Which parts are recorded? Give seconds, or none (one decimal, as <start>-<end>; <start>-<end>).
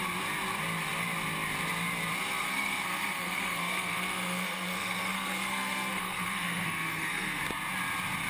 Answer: 0.0-2.4; 7.4-8.3